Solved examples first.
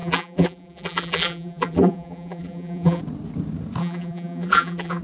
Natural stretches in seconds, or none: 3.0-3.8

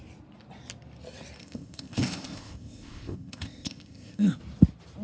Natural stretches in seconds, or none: 0.0-1.4; 4.4-5.0

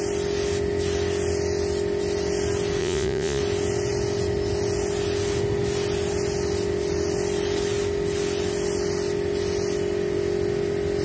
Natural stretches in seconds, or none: 0.0-2.8; 3.4-11.0

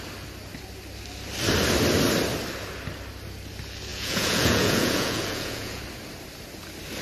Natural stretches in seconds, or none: 0.0-3.9; 5.8-7.0

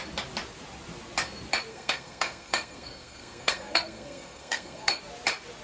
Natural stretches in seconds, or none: 0.0-1.7; 5.0-5.6

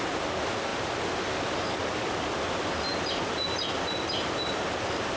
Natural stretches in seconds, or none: 0.0-5.2

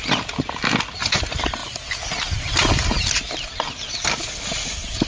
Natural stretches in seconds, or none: 0.0-5.1

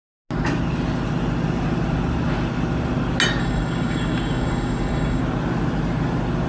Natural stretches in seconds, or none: 0.0-3.4; 5.2-6.5